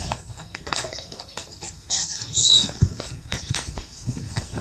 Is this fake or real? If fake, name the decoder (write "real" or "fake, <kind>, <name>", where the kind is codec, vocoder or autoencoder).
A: fake, codec, SNAC